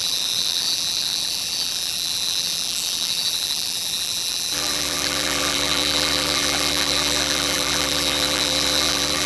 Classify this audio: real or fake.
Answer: fake